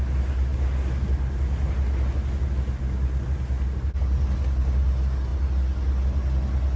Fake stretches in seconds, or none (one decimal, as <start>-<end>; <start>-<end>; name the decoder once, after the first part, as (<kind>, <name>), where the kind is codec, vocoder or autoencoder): none